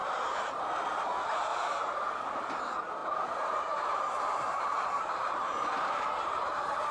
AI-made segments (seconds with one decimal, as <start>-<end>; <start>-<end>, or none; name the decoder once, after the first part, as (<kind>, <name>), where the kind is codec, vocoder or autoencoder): 0.0-0.6 (vocoder, BigVGAN v2); 1.5-2.6; 3.0-6.9

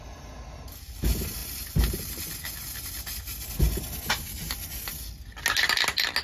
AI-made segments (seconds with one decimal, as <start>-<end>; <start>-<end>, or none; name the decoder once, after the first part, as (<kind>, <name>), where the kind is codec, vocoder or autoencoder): none

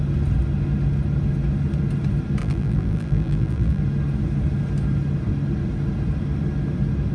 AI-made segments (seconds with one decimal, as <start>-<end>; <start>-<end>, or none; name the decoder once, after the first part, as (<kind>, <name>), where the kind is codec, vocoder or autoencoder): 2.4-3.8 (vocoder, BigVGAN v2)

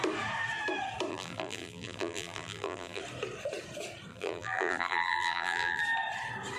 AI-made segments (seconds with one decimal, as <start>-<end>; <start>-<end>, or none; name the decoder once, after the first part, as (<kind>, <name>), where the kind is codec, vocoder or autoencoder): 1.1-3.0 (vocoder, BigVGAN v2); 4.1-5.8

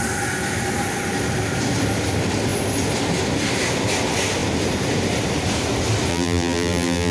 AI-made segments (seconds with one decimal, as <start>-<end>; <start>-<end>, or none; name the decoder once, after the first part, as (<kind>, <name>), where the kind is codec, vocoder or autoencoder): 6.1-7.1 (vocoder, BigVGAN v2)

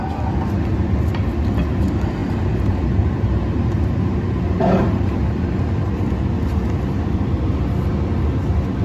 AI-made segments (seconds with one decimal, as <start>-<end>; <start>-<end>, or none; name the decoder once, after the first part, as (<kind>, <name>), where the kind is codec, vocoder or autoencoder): 2.2-6.0 (vocoder, BigVGAN v2)